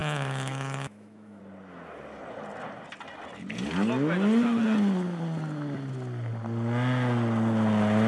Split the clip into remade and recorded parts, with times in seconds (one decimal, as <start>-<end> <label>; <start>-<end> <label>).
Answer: 0.0-1.4 remade; 1.4-8.1 recorded